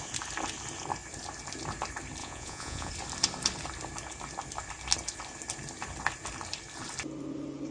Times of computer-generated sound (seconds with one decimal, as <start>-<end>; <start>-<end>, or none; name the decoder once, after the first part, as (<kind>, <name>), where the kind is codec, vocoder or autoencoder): 2.2-2.9 (vocoder, Vocos)